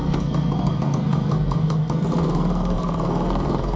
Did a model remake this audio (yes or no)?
yes